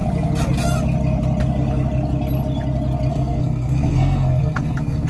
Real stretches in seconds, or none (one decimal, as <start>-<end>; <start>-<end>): 0.0-3.1

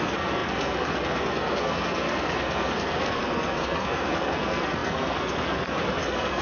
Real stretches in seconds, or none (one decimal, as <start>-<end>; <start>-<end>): none

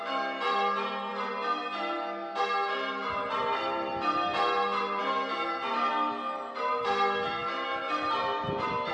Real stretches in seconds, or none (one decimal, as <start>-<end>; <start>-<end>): 0.0-8.9

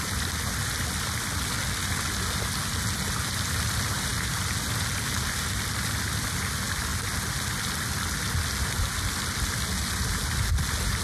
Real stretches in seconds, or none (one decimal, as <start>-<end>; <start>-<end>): 0.0-11.0

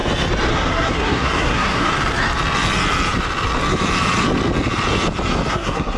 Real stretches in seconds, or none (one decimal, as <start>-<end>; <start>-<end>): 0.0-0.5; 1.9-5.5

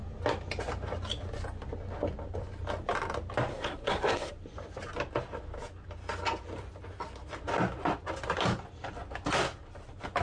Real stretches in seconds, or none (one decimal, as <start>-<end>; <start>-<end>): 0.0-3.5; 4.3-10.2